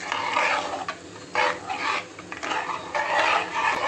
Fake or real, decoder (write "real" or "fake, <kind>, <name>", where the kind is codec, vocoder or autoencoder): real